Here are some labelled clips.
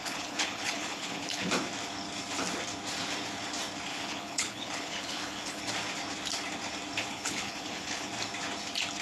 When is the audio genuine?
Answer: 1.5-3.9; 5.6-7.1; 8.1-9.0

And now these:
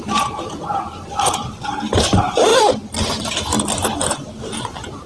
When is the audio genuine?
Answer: 2.5-3.2

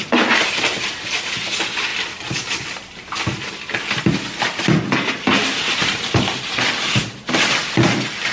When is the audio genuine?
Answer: 0.0-8.3

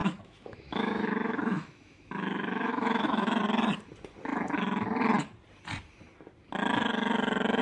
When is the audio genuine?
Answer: 3.4-7.6

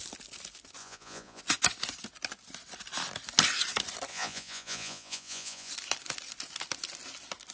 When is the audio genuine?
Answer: 0.0-0.8; 1.4-4.1; 5.7-7.5